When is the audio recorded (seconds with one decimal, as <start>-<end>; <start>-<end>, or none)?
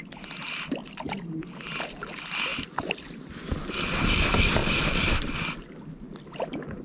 0.0-0.8; 1.4-4.6; 5.3-6.8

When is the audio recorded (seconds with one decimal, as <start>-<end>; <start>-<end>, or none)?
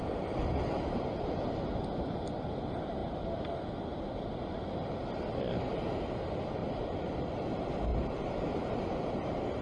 0.0-9.6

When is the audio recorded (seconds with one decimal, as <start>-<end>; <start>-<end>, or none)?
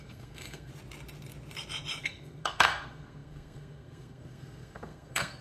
0.7-2.0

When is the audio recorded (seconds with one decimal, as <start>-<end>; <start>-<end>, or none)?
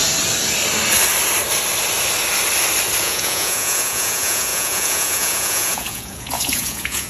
0.0-3.0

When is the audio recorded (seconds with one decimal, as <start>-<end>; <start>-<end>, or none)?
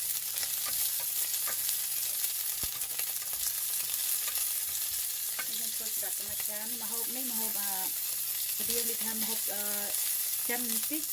0.0-11.1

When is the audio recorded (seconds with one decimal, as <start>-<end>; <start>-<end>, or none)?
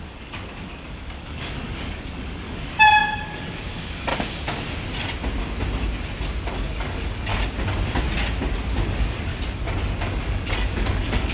4.1-6.5; 7.3-8.5; 9.3-10.0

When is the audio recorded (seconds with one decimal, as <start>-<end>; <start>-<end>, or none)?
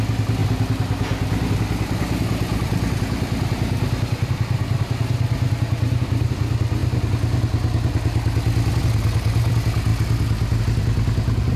0.0-11.6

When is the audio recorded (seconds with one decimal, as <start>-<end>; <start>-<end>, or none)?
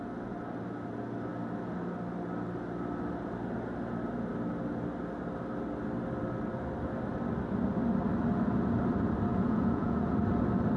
0.0-9.3; 10.1-10.8